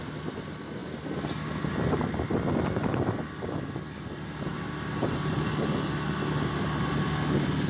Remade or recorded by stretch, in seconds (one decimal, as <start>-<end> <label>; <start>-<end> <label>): 0.0-4.5 recorded; 4.5-5.3 remade; 5.3-7.7 recorded